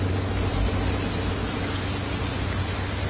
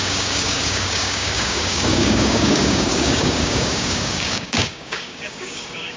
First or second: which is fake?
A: second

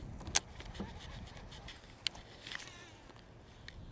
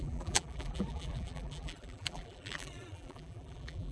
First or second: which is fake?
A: second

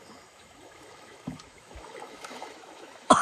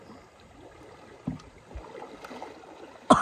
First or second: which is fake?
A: first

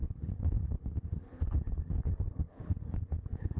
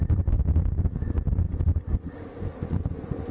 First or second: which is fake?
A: first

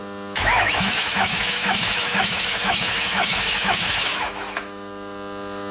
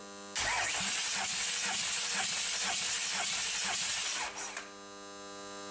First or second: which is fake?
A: first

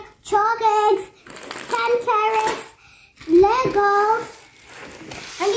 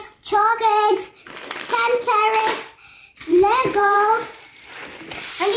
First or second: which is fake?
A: second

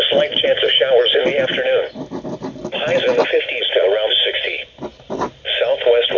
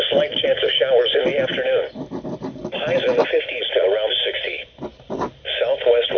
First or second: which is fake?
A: second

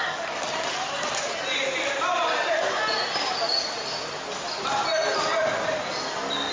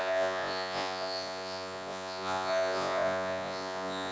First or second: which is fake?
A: second